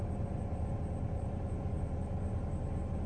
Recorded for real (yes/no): yes